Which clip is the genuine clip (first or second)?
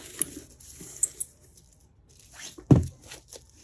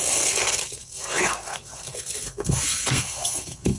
first